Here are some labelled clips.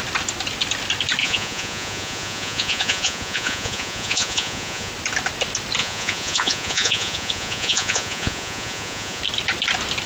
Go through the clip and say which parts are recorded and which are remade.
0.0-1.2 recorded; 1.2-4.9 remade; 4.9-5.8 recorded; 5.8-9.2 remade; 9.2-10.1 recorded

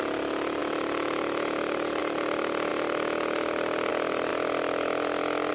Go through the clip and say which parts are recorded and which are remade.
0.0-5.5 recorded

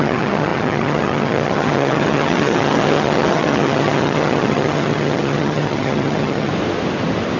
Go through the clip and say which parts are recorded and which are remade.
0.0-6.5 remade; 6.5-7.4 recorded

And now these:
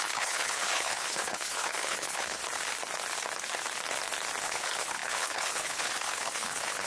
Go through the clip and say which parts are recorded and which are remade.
0.0-2.4 remade; 2.4-4.4 recorded; 4.4-6.9 remade